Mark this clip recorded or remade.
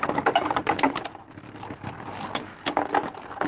recorded